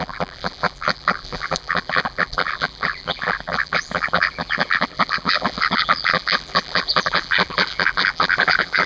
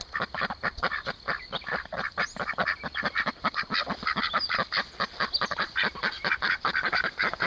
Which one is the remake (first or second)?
first